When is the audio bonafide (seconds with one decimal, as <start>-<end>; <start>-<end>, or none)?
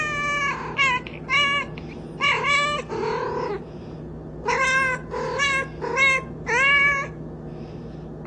0.0-8.3